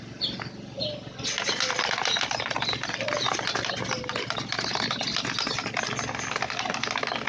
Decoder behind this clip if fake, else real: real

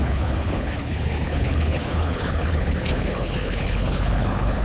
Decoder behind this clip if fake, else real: fake, codec, HILCodec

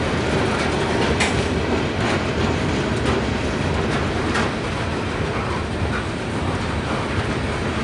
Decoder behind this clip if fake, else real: real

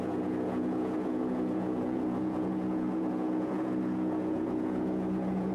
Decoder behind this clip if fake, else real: fake, vocoder, Vocos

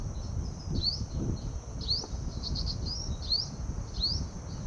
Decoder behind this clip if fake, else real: real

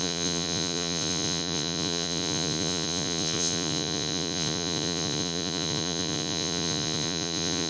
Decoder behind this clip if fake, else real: fake, vocoder, Vocos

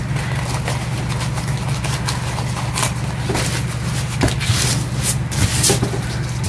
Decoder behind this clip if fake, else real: real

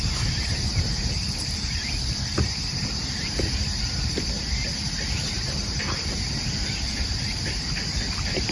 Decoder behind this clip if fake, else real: real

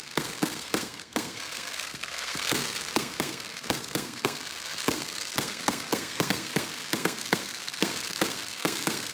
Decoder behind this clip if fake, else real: fake, codec, SNAC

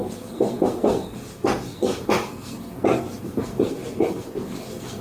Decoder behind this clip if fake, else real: fake, codec, SNAC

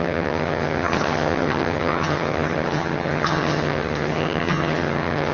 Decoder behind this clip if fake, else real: fake, vocoder, HiFi-GAN